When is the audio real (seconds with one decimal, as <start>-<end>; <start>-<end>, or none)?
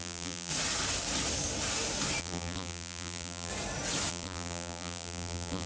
0.5-2.2; 3.5-4.1